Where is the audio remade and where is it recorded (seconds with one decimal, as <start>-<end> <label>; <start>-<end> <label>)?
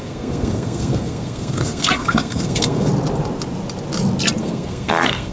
0.0-2.9 remade; 2.9-4.4 recorded; 4.4-5.3 remade